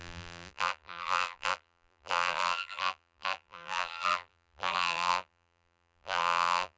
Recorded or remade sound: remade